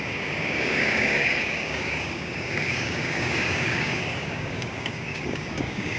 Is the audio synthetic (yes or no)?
yes